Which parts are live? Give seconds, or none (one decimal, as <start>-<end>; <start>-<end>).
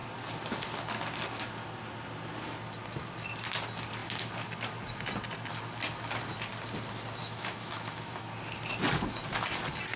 0.0-7.2; 8.2-10.0